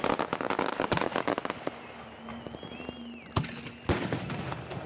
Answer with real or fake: real